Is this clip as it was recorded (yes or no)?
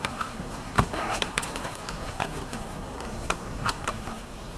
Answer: no